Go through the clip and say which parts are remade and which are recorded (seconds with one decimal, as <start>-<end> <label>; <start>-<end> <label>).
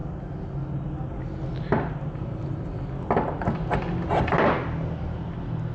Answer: 0.0-5.7 recorded